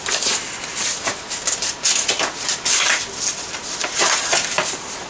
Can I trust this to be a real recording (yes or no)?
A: yes